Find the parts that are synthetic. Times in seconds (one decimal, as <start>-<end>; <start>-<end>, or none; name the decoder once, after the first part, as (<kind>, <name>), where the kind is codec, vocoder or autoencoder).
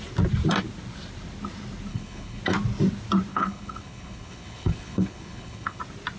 1.9-2.4 (codec, HILCodec); 3.3-5.8